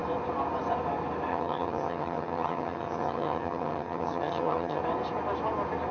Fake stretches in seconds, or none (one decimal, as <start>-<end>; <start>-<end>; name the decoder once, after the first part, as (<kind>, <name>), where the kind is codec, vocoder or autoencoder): 1.3-4.8 (vocoder, HiFi-GAN)